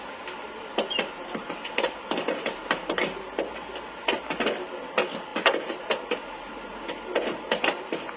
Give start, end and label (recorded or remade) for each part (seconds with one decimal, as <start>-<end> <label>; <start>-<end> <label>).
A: 0.0-8.2 recorded